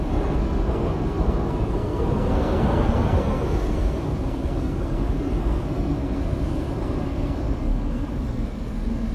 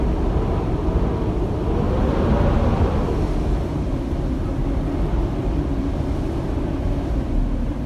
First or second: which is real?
second